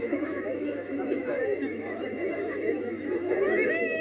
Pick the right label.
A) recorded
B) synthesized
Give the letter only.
B